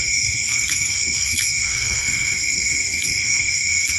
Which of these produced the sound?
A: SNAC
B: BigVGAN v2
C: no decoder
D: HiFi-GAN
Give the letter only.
A